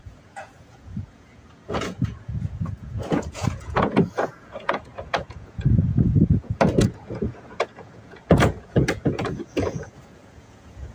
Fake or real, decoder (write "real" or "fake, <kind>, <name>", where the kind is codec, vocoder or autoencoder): fake, vocoder, Vocos